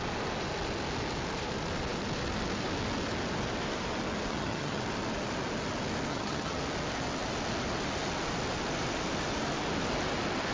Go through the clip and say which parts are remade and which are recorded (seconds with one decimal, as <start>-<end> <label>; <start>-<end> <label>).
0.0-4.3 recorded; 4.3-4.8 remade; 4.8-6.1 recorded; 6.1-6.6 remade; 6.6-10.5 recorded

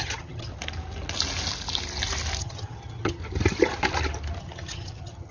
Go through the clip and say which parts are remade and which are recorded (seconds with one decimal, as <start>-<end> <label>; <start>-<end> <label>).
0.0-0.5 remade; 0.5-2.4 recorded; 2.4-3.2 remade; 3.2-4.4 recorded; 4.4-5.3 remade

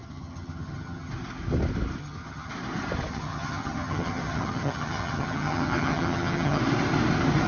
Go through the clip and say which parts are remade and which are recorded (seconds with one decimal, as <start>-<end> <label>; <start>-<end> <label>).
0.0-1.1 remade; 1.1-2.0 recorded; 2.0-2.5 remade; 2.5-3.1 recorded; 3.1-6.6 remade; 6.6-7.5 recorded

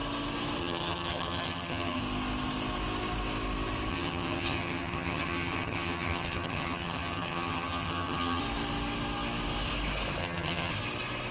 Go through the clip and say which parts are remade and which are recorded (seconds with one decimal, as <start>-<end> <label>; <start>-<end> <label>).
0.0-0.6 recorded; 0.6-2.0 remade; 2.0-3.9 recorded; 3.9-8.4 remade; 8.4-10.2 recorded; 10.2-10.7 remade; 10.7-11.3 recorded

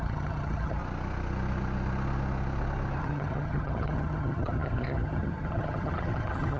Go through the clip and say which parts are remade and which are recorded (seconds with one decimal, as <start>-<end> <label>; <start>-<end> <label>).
0.0-0.8 remade; 0.8-3.0 recorded; 3.0-6.6 remade

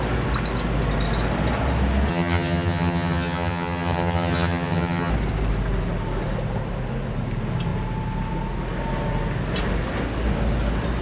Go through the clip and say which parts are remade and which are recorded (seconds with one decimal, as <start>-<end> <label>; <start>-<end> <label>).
0.0-2.1 recorded; 2.1-5.1 remade; 5.1-11.0 recorded